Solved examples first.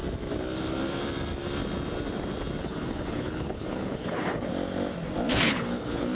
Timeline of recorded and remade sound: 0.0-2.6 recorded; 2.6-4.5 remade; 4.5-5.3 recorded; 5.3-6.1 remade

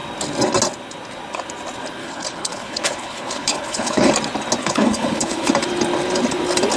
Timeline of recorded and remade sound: 0.0-2.0 recorded; 2.0-4.1 remade; 4.1-4.6 recorded; 4.6-5.5 remade; 5.5-6.8 recorded

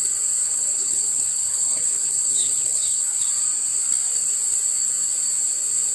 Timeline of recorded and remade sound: 0.0-0.4 recorded; 0.4-3.2 remade; 3.2-5.9 recorded

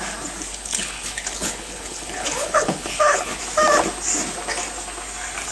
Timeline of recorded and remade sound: 0.0-0.5 recorded; 0.5-3.4 remade; 3.4-5.5 recorded

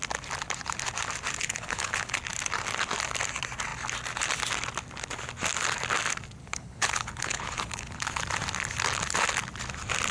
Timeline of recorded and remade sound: 0.0-1.4 recorded; 1.4-2.2 remade; 2.2-6.4 recorded; 6.4-8.2 remade; 8.2-10.1 recorded

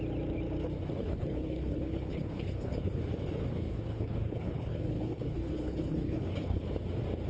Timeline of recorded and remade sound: 0.0-1.0 recorded; 1.0-3.0 remade; 3.0-3.7 recorded; 3.7-6.6 remade; 6.6-7.3 recorded

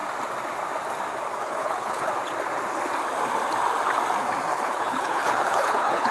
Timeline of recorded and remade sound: 0.0-1.4 recorded; 1.4-2.1 remade; 2.1-4.5 recorded; 4.5-6.1 remade

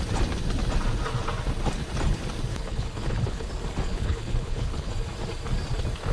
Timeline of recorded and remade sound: 0.0-2.5 recorded; 2.5-3.5 remade; 3.5-3.9 recorded; 3.9-4.9 remade; 4.9-6.1 recorded